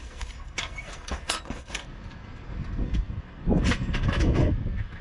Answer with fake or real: fake